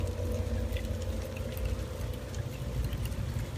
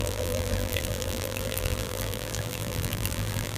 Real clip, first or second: first